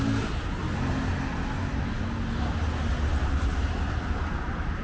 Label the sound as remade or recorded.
recorded